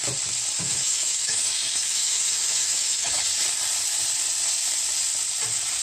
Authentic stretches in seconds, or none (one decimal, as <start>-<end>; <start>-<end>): 0.0-0.6; 3.2-5.8